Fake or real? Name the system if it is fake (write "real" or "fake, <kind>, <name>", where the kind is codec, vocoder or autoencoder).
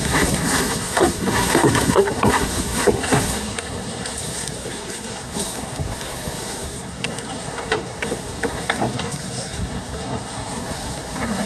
fake, codec, SNAC